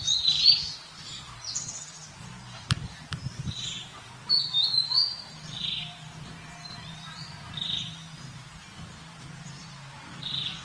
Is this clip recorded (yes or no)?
yes